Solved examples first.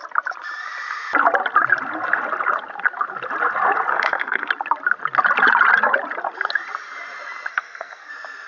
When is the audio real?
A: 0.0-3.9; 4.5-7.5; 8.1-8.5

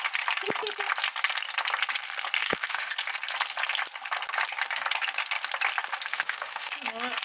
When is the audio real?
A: 0.0-2.4; 2.9-6.1; 6.7-7.2

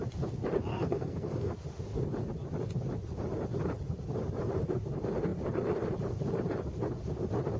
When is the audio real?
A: 0.0-0.7; 1.5-7.6

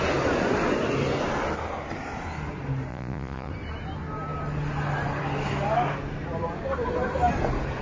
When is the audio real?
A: 0.0-2.9; 3.5-7.8

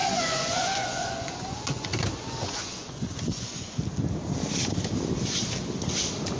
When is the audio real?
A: 3.8-6.4

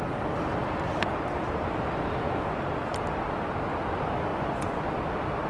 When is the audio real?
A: 0.0-4.3; 4.8-5.5

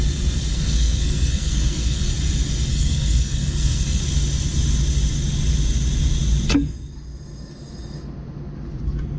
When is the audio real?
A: 0.0-0.5; 2.1-2.7; 4.0-9.2

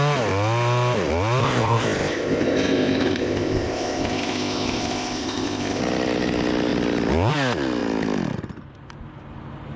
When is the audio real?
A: 0.0-1.4; 5.8-9.8